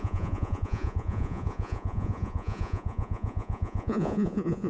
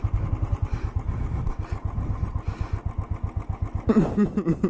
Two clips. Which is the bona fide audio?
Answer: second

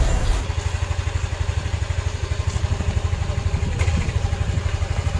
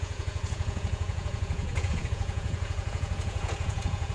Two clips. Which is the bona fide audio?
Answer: first